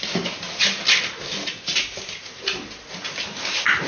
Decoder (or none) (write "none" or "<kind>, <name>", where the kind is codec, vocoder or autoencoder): none